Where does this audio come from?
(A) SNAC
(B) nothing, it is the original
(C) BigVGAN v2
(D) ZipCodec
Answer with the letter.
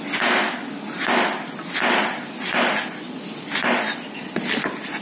B